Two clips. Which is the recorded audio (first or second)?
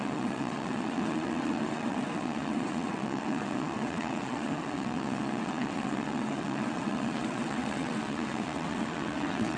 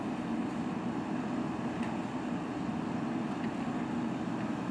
second